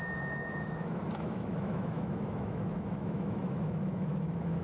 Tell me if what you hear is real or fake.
fake